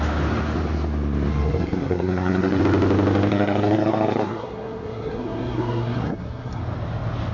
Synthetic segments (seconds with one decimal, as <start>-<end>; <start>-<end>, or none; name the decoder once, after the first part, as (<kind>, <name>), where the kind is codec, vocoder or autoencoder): 1.3-2.6 (codec, SNAC); 3.3-6.6